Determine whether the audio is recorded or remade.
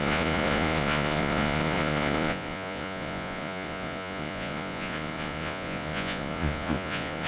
remade